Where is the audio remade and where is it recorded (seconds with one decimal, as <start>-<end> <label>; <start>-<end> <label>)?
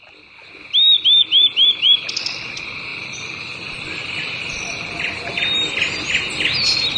0.0-1.2 recorded; 1.2-2.4 remade; 2.4-2.9 recorded; 2.9-4.6 remade; 4.6-7.0 recorded